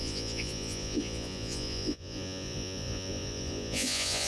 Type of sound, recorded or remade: remade